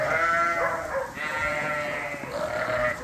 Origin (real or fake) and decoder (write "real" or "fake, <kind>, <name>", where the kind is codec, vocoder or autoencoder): real